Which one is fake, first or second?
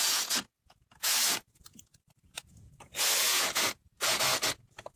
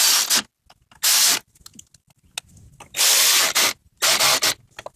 first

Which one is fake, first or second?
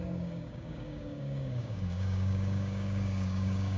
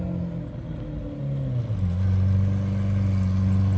first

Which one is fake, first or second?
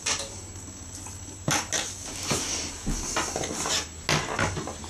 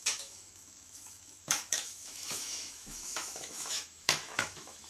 second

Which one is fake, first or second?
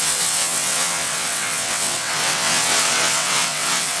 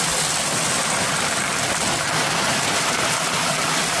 first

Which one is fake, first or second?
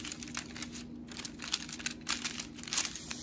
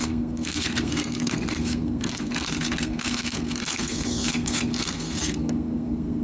second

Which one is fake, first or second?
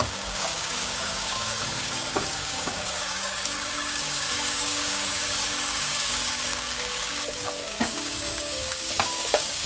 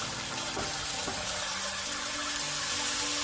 first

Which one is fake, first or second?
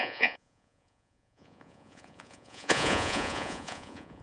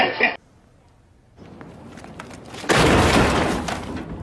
first